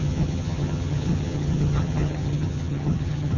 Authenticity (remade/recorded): remade